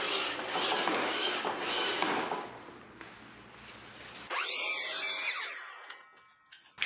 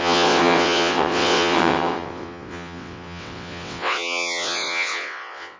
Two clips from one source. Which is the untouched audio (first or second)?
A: first